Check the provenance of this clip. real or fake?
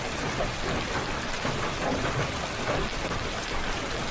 real